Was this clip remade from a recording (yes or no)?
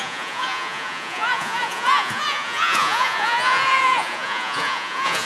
yes